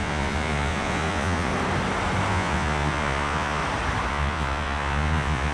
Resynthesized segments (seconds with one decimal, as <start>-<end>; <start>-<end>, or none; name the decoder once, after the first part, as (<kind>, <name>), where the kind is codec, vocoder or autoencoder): 0.0-1.5 (vocoder, Vocos); 2.3-3.6; 4.1-5.5